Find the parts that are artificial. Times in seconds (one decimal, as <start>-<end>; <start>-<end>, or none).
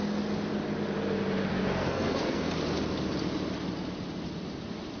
1.5-2.5